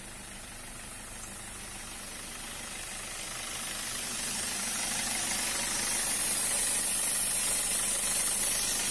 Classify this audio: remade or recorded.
recorded